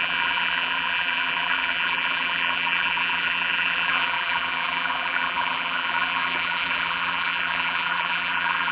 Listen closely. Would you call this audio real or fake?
fake